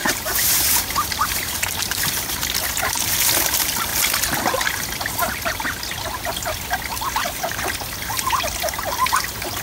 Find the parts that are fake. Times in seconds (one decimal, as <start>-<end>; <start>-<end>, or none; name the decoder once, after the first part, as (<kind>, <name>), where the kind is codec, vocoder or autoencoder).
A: 0.0-2.2 (vocoder, BigVGAN v2)